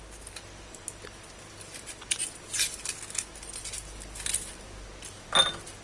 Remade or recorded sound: recorded